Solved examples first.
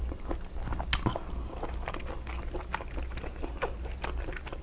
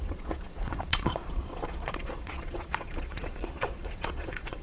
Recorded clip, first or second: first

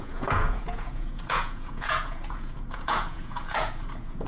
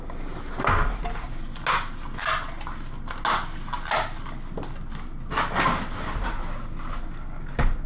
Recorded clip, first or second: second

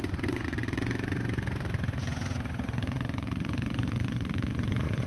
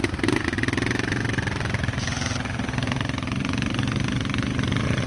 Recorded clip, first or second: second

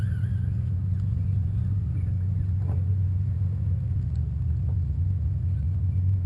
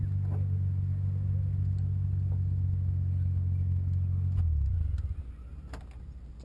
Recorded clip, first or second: second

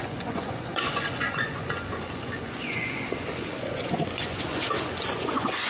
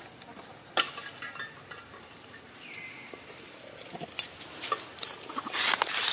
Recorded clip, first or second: second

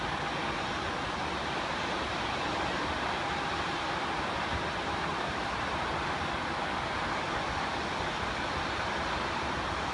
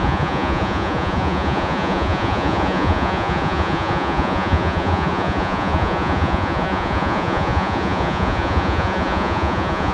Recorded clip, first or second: first